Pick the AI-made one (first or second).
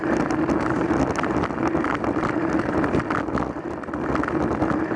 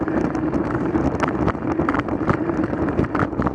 second